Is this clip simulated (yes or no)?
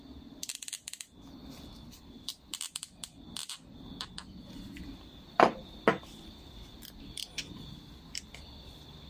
yes